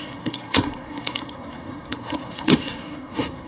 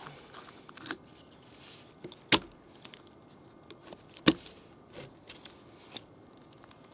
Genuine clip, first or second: second